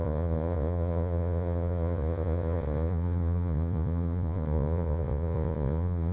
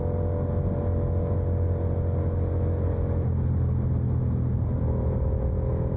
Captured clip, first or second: second